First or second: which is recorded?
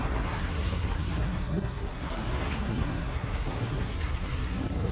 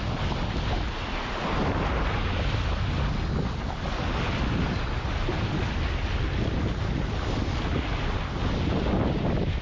second